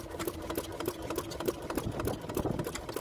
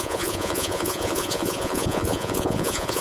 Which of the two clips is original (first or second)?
first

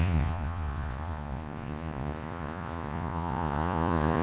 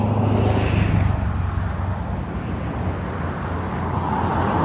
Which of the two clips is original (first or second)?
second